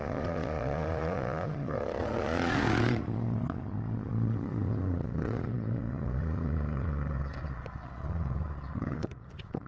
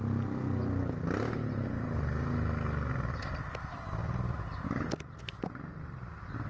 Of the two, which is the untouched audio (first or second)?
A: second